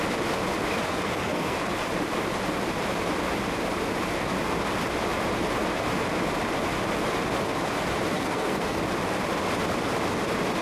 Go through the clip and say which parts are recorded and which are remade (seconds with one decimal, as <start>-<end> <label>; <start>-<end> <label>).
0.0-0.9 recorded; 0.9-1.7 remade; 1.7-8.1 recorded; 8.1-8.8 remade; 8.8-10.6 recorded